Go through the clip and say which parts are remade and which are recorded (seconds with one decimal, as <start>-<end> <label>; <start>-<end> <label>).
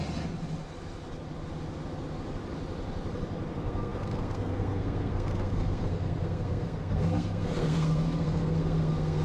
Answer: 0.0-3.5 recorded; 3.5-9.2 remade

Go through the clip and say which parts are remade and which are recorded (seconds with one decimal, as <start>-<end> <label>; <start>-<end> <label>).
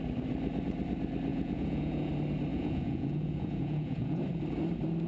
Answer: 0.0-1.3 recorded; 1.3-2.1 remade; 2.1-2.5 recorded; 2.5-4.2 remade; 4.2-5.1 recorded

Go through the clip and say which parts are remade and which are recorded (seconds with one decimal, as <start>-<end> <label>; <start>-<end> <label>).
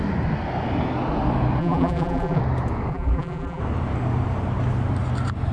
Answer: 0.0-1.6 recorded; 1.6-2.4 remade; 2.4-2.9 recorded; 2.9-3.6 remade; 3.6-5.5 recorded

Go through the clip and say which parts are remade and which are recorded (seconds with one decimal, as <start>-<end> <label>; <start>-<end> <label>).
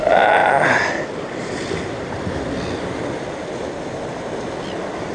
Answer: 0.0-5.1 recorded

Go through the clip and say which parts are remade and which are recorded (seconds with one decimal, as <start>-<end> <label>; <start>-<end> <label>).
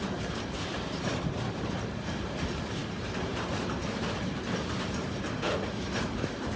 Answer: 0.0-2.4 remade; 2.4-2.8 recorded; 2.8-5.6 remade; 5.6-6.6 recorded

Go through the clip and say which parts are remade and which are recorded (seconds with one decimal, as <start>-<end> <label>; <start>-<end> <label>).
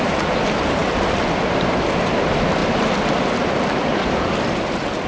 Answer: 0.0-0.8 remade; 0.8-1.4 recorded; 1.4-5.1 remade